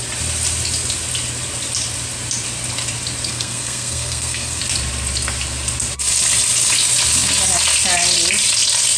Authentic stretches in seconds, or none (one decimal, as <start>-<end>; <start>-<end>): 0.0-3.3; 4.6-9.0